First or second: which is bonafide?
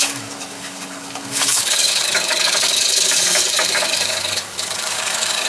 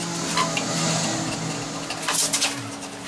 second